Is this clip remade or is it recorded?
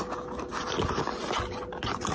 recorded